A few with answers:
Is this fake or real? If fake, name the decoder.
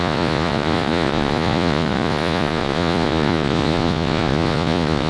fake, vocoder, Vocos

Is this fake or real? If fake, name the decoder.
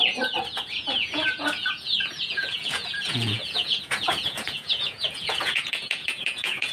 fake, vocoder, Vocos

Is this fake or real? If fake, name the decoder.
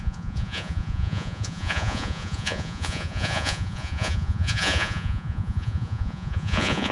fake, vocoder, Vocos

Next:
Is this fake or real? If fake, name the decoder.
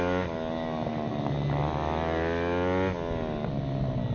real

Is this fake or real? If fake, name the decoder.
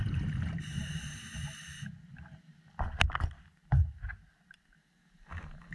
real